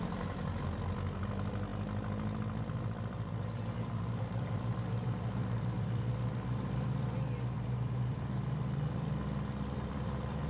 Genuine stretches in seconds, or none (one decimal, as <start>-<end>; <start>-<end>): 1.7-2.6